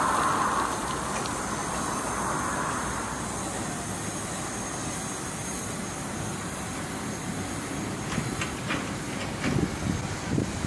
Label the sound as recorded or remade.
recorded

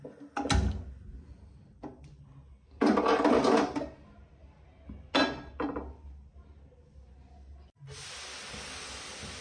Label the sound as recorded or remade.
recorded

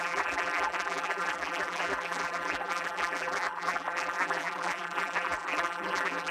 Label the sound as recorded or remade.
remade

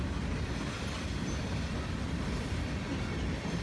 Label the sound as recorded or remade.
recorded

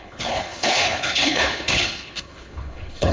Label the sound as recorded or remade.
remade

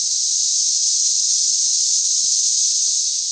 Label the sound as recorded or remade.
recorded